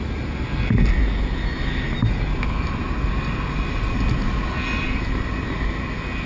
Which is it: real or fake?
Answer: real